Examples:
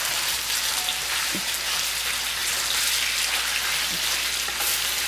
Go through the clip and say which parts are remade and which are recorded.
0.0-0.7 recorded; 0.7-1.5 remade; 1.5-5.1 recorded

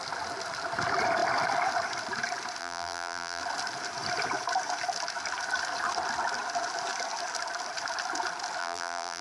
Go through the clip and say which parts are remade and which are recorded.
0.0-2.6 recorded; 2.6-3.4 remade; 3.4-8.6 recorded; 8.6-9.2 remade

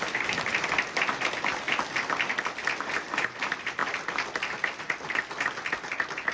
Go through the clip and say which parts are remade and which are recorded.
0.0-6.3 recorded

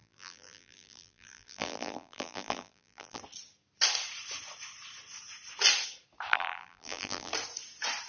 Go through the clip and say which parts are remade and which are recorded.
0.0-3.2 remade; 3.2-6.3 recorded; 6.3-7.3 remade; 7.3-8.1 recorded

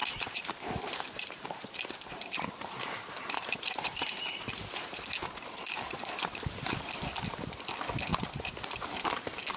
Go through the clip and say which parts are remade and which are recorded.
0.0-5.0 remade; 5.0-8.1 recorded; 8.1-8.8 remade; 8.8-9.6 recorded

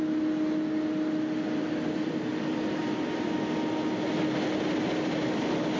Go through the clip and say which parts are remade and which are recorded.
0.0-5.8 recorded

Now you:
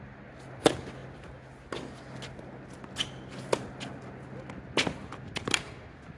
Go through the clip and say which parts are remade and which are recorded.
0.0-6.2 recorded